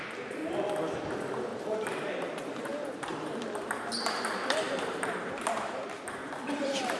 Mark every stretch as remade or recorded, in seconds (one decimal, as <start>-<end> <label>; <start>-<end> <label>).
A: 0.0-0.4 remade; 0.4-1.1 recorded; 1.1-7.0 remade